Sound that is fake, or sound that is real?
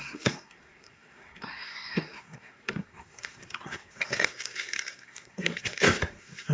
fake